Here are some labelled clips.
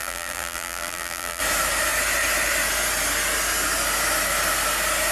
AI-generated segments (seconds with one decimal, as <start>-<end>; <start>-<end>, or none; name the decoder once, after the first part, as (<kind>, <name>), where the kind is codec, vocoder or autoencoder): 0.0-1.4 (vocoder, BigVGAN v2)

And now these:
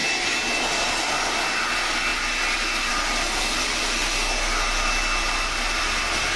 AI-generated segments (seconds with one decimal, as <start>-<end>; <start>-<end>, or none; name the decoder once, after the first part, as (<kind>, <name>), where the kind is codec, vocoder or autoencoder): 0.0-0.7 (vocoder, BigVGAN v2)

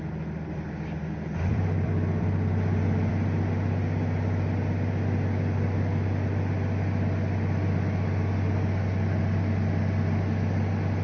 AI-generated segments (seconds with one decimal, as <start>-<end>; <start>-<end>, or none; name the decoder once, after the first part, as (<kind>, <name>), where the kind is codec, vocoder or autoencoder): 1.5-3.1 (vocoder, BigVGAN v2)